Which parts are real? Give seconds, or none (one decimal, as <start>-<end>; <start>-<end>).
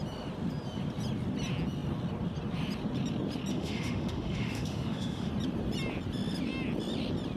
0.0-3.5; 5.3-7.4